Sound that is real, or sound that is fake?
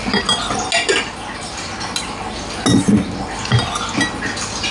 real